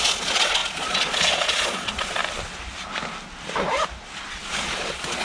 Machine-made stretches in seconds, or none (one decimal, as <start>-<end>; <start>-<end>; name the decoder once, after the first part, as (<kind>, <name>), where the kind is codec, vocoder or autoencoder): 0.0-2.2 (vocoder, Vocos); 4.0-5.2